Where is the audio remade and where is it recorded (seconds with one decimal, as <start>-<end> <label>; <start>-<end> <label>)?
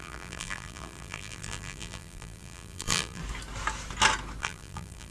0.0-3.2 remade; 3.2-4.4 recorded; 4.4-5.1 remade